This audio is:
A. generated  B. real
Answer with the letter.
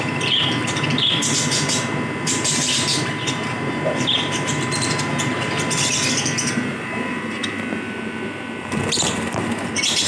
A